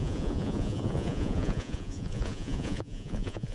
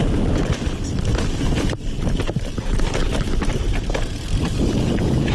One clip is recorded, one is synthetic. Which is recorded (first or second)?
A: second